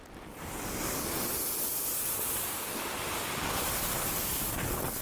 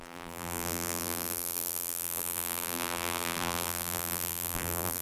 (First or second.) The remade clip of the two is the second